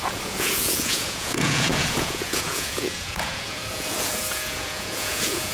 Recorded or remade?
remade